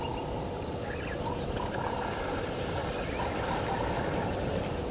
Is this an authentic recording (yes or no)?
yes